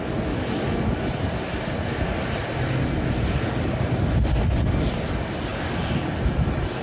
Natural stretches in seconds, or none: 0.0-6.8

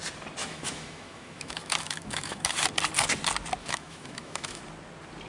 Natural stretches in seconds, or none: 0.0-0.4; 2.4-3.6; 4.6-5.3

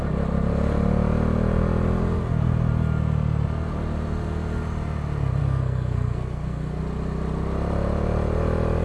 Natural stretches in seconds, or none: 0.0-5.4; 6.8-8.8

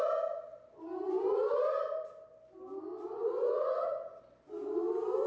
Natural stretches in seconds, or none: 0.0-2.9; 4.2-5.3

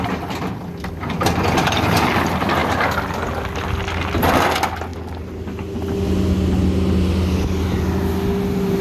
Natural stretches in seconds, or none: 0.0-8.8